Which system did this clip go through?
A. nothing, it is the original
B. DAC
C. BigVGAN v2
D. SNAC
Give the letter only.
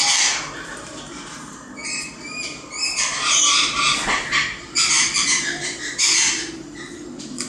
C